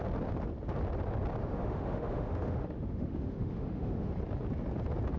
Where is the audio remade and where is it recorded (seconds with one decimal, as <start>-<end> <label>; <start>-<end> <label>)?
0.0-1.4 recorded; 1.4-4.1 remade; 4.1-5.2 recorded